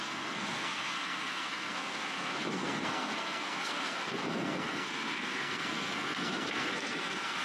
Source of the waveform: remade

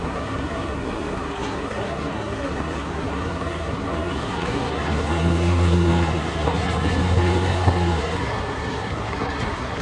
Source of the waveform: remade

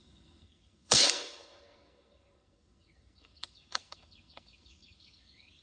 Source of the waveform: remade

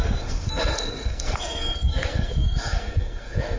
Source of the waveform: remade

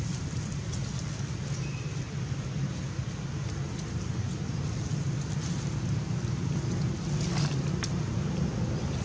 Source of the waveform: recorded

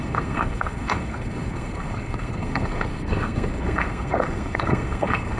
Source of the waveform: remade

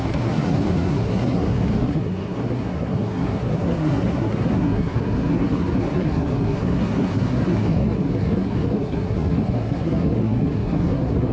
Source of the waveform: remade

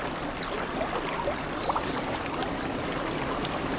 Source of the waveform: recorded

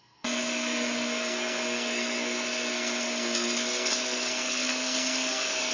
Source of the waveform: remade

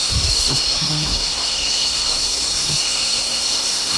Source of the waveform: remade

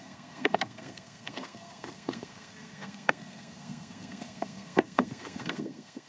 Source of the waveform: remade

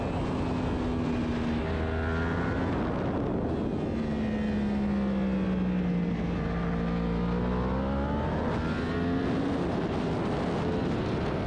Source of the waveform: recorded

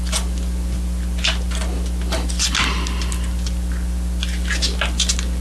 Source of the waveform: recorded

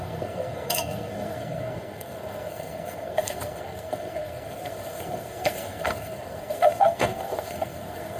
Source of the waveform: remade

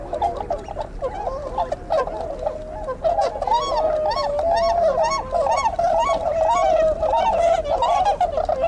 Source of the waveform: recorded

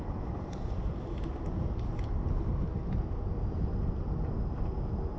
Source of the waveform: recorded